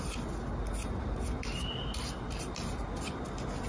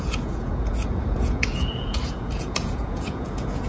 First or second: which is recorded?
first